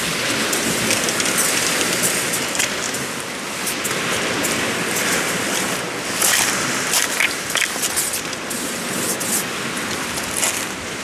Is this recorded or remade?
recorded